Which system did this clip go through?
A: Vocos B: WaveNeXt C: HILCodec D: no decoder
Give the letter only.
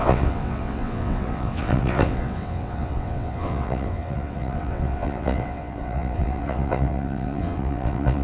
B